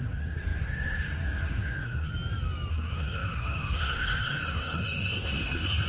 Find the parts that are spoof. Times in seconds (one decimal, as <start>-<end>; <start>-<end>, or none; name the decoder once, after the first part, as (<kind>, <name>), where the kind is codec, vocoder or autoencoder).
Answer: 0.0-2.1 (codec, SNAC); 2.7-5.9